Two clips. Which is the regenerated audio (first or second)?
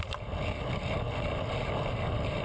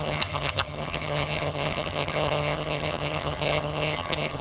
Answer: second